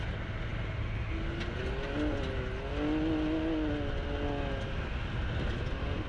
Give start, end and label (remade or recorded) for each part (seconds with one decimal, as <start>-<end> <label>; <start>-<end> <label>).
0.0-6.1 recorded